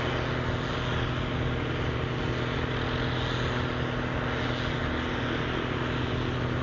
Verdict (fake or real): real